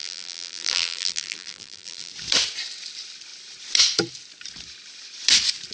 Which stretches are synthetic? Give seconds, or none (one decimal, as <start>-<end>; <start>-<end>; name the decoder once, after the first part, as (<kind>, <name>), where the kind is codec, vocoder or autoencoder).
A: 0.0-2.1 (vocoder, BigVGAN v2)